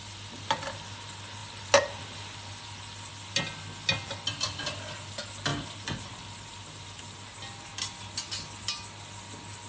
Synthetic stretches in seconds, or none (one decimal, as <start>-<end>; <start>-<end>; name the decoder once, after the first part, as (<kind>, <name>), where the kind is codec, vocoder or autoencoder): none

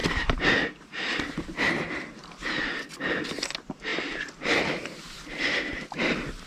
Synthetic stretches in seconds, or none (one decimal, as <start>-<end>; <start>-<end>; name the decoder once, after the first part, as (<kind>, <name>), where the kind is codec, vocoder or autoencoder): 0.0-2.5 (vocoder, BigVGAN v2); 3.9-6.0

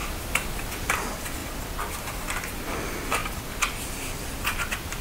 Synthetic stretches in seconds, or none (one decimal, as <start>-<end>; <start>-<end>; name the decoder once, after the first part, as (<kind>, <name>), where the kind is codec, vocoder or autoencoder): none

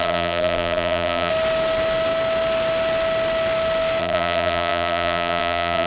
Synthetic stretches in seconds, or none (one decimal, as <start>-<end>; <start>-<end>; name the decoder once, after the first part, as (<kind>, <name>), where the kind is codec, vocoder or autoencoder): 0.0-1.3 (vocoder, BigVGAN v2); 4.0-5.9